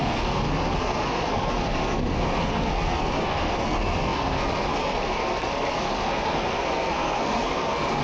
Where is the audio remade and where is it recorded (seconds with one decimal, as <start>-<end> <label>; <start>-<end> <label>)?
0.0-8.0 remade